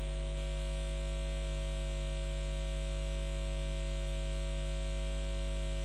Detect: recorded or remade recorded